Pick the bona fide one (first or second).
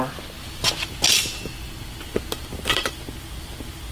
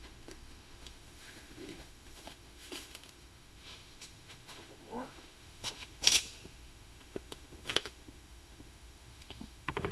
first